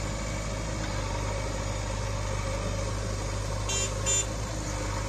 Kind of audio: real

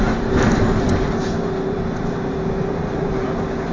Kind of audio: real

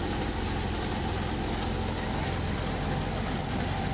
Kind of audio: real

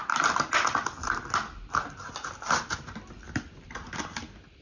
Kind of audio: real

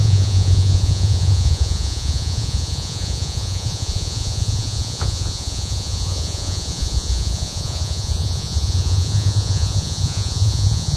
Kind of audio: fake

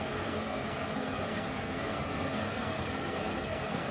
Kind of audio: fake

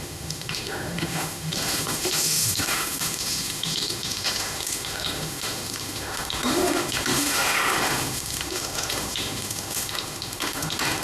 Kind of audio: fake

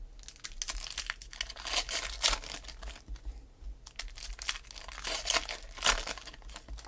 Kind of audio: real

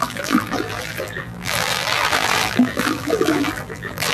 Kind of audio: fake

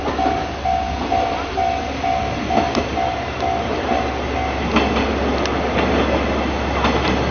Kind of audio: real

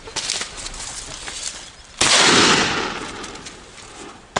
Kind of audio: real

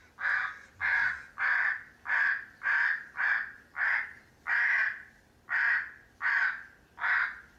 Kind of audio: real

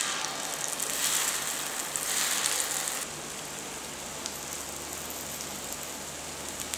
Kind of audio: real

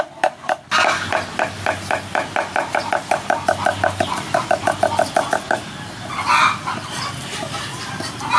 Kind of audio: real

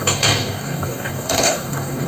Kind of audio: fake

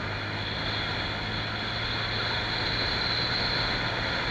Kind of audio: real